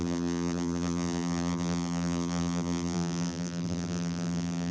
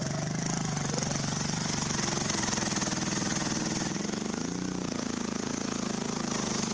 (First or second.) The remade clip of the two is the first